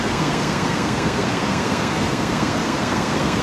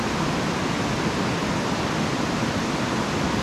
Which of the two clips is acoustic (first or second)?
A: second